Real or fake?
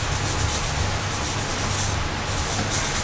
real